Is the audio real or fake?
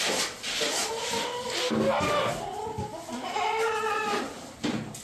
real